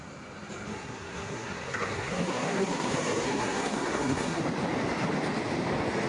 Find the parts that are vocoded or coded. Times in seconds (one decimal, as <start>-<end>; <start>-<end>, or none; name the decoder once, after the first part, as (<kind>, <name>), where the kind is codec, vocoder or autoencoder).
0.7-4.4 (codec, SNAC)